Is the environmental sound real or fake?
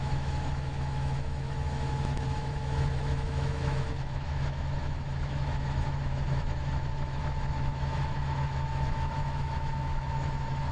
fake